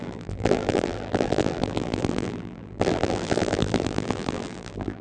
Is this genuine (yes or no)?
no